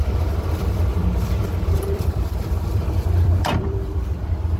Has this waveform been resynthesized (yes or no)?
yes